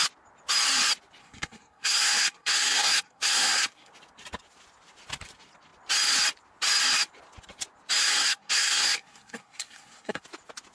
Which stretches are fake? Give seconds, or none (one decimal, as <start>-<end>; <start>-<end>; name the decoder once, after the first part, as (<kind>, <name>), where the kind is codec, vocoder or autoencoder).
1.2-3.9 (codec, SNAC); 8.0-10.2